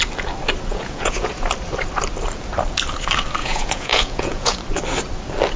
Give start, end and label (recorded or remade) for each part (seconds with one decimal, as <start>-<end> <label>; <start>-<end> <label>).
0.0-0.7 recorded; 0.7-1.3 remade; 1.3-3.4 recorded; 3.4-4.6 remade; 4.6-5.6 recorded